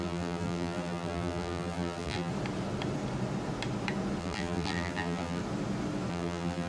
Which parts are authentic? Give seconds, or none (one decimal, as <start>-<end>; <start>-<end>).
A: 2.3-4.2; 5.4-6.1

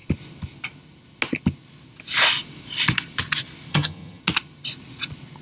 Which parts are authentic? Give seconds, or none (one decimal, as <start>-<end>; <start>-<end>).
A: 0.0-3.7; 4.2-5.4

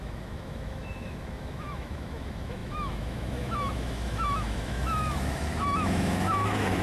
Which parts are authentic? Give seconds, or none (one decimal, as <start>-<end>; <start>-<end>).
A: none

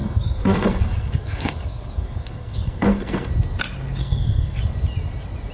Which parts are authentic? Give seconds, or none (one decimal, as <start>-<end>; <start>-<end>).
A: 3.3-4.0; 4.6-5.5

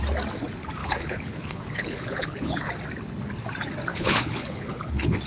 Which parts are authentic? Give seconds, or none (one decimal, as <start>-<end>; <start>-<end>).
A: 0.0-0.8; 2.7-3.9